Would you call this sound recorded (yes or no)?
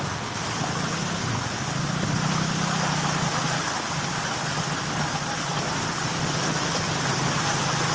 yes